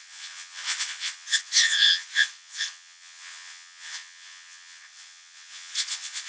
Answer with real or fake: fake